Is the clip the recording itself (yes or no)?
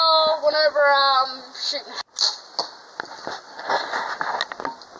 yes